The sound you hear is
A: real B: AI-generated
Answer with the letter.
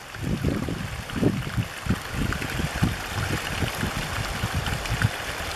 A